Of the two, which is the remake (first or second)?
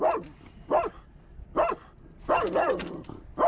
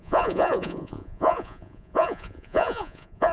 second